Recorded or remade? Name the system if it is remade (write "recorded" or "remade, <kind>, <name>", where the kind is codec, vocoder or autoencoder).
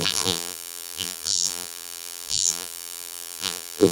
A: remade, vocoder, BigVGAN v2